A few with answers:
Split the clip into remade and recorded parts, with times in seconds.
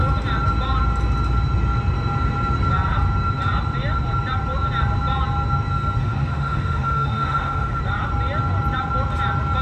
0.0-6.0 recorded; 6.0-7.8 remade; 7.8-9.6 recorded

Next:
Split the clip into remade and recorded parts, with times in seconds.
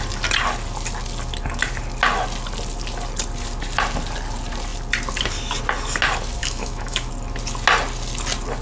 0.0-6.4 recorded; 6.4-7.1 remade; 7.1-8.6 recorded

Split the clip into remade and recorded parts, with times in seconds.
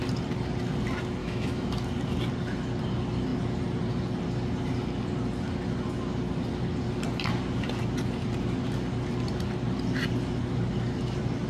0.0-1.2 recorded; 1.2-1.7 remade; 1.7-11.5 recorded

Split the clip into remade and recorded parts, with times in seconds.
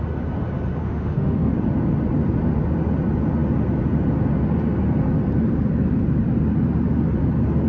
0.0-0.8 recorded; 0.8-1.5 remade; 1.5-7.7 recorded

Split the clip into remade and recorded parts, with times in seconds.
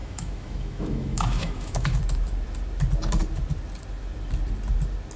0.0-2.0 remade; 2.0-5.2 recorded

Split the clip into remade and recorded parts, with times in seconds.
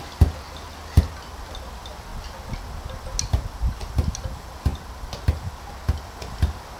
0.0-6.8 recorded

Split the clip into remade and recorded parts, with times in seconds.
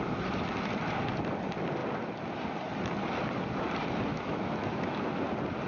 0.0-4.1 recorded; 4.1-5.1 remade; 5.1-5.7 recorded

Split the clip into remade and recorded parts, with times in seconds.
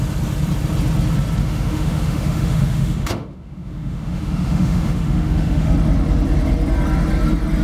0.0-1.4 recorded; 1.4-5.7 remade; 5.7-7.6 recorded